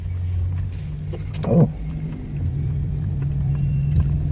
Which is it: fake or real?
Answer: real